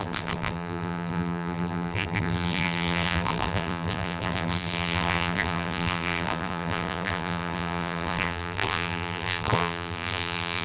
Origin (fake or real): fake